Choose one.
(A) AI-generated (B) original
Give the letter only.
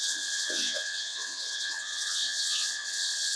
A